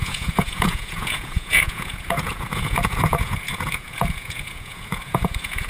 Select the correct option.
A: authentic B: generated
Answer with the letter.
B